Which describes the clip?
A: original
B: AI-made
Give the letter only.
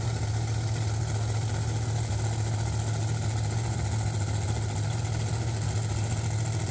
A